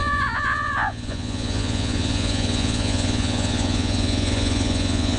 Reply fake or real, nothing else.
fake